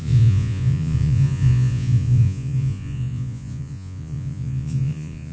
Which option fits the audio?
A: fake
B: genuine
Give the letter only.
A